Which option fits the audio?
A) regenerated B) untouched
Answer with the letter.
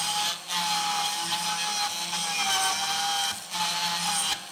B